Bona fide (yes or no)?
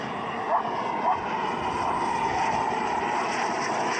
yes